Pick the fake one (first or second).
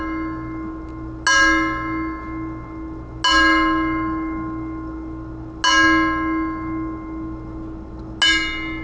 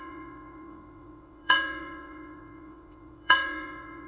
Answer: second